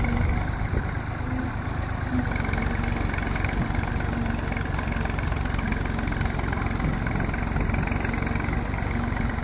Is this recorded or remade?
recorded